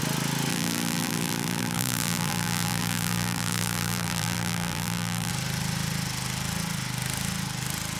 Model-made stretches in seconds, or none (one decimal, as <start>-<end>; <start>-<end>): 0.5-5.3